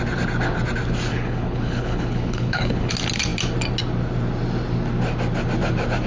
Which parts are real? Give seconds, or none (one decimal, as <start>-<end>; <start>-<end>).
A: 0.0-1.1; 2.9-6.1